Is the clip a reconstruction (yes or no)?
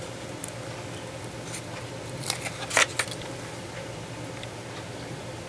no